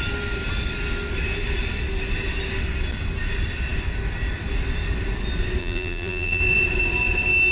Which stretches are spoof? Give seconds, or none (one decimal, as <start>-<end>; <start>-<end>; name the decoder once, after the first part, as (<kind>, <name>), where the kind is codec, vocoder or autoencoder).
5.6-6.4 (vocoder, BigVGAN v2)